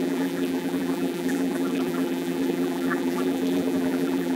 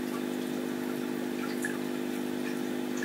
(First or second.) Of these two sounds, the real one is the second